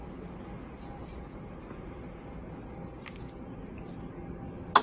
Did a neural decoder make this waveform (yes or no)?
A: no